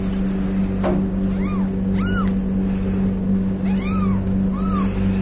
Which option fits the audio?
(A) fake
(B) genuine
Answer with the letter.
B